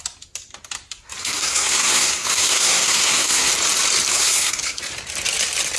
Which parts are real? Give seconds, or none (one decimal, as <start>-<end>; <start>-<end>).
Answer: 0.0-1.2; 3.5-4.1; 4.8-5.8